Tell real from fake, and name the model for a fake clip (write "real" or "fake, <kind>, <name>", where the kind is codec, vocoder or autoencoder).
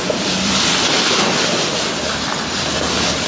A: fake, vocoder, BigVGAN v2